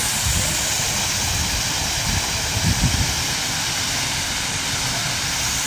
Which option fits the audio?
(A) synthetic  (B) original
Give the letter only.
B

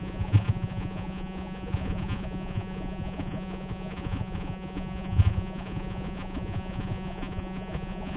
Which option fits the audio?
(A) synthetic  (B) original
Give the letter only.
A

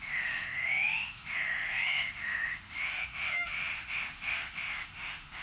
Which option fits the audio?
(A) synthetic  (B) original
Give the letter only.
A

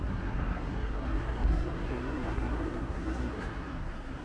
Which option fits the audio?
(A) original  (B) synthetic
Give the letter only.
B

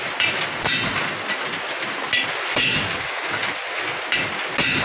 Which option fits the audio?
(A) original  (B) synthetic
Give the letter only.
A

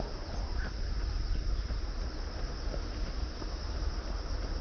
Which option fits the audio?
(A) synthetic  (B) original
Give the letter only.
B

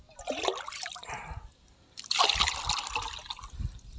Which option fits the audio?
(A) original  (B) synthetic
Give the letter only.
A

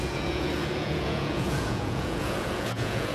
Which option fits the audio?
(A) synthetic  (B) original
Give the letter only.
A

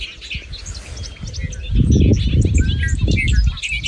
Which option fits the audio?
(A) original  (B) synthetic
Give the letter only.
A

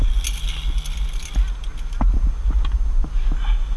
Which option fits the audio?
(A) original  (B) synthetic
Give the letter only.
A